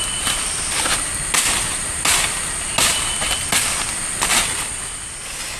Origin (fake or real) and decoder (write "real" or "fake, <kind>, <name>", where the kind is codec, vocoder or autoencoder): real